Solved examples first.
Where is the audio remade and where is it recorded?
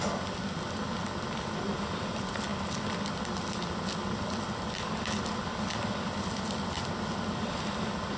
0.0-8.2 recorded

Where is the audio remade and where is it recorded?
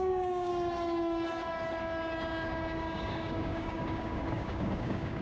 0.0-0.5 remade; 0.5-2.3 recorded; 2.3-5.2 remade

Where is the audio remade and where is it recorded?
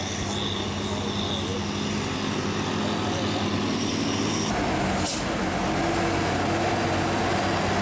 0.0-7.8 recorded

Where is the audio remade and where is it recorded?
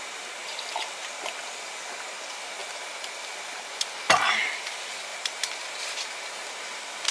0.0-0.4 recorded; 0.4-0.9 remade; 0.9-5.1 recorded; 5.1-7.1 remade